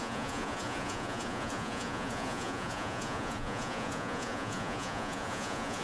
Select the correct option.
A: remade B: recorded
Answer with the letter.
A